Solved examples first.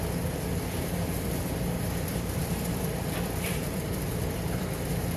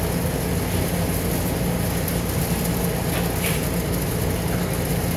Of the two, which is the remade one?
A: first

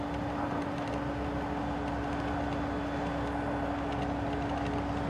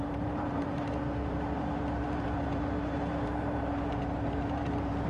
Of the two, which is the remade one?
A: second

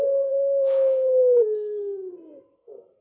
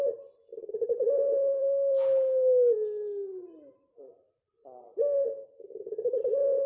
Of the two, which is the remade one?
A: first